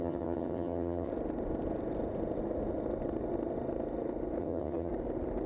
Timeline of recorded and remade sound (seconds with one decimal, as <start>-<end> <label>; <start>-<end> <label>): 0.0-1.1 remade; 1.1-4.4 recorded; 4.4-4.9 remade; 4.9-5.5 recorded